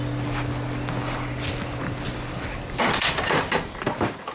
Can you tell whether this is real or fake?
real